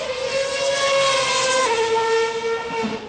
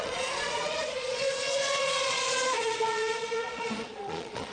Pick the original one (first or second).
first